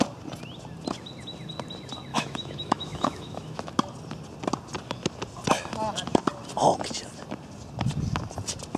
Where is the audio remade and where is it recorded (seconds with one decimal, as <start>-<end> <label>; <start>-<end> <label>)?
0.0-2.1 recorded; 2.1-3.7 remade; 3.7-8.8 recorded